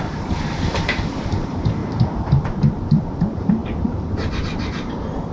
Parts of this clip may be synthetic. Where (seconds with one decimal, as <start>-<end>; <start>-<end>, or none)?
0.0-1.8; 2.7-5.3